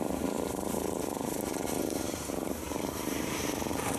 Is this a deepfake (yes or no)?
yes